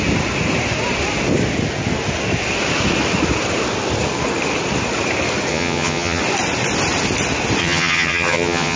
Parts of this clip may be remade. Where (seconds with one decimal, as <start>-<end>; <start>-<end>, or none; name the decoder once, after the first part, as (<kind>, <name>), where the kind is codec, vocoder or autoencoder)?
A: 5.5-6.2 (vocoder, HiFi-GAN); 7.6-8.8